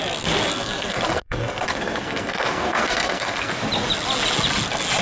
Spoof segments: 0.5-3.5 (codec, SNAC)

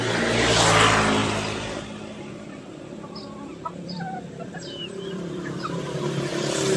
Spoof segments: 1.2-2.8 (vocoder, BigVGAN v2); 3.5-5.8

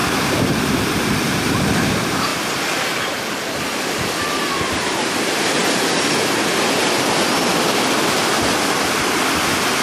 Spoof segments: 0.0-9.8 (vocoder, BigVGAN v2)

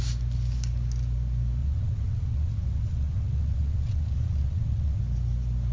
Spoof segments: 1.6-5.0 (vocoder, WaveNeXt)

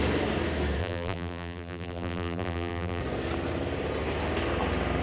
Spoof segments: 0.8-3.0 (vocoder, BigVGAN v2)

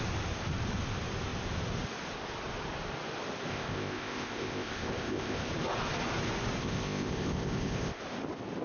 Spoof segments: 3.5-5.5 (codec, ZipCodec); 6.6-8.0